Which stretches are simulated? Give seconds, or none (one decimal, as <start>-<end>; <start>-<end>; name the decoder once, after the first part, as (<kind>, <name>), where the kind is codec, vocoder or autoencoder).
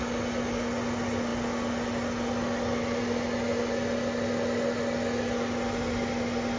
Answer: none